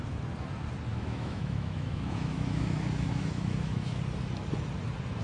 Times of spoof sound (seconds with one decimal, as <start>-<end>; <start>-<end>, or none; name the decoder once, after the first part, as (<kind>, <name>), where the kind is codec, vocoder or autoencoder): 0.9-4.0 (autoencoder, DAC-VAE)